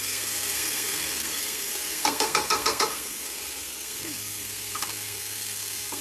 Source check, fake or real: fake